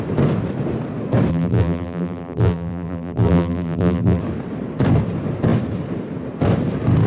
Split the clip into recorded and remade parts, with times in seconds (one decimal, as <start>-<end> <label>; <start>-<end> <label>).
0.0-1.3 recorded; 1.3-4.2 remade; 4.2-7.1 recorded